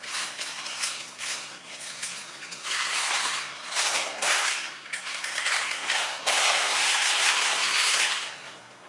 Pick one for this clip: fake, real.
fake